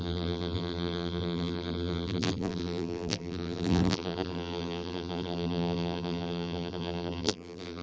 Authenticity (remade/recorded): remade